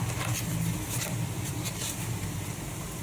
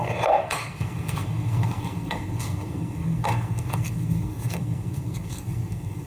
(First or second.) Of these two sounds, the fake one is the second